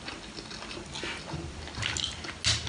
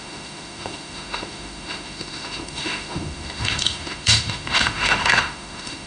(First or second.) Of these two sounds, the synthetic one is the second